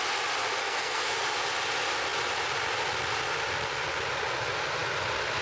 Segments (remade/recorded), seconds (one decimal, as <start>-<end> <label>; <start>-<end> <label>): 0.0-0.6 recorded; 0.6-1.2 remade; 1.2-5.4 recorded